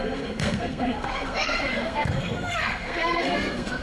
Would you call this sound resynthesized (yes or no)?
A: yes